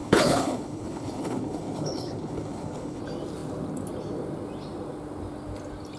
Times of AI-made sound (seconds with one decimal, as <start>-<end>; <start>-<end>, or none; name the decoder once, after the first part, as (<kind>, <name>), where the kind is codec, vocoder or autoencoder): 0.0-3.0 (codec, HILCodec)